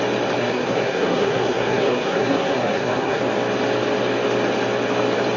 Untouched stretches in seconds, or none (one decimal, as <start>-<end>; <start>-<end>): 0.0-0.4; 3.2-5.4